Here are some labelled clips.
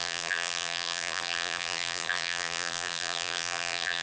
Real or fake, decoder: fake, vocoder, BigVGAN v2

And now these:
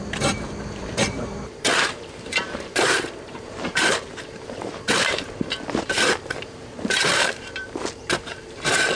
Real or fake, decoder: fake, vocoder, BigVGAN v2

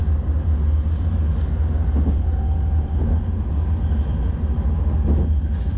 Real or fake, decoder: real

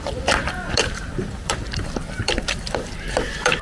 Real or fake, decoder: fake, vocoder, BigVGAN v2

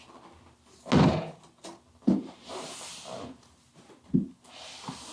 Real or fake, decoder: real